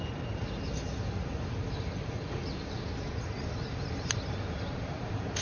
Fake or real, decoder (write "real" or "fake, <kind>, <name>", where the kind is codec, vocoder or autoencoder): real